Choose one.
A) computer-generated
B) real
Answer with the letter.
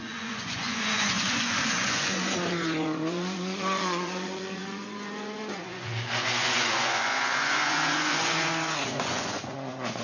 A